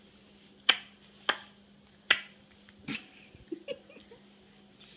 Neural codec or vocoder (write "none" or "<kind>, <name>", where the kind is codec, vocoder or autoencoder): none